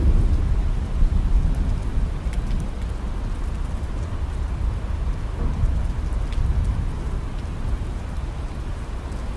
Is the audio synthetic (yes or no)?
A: no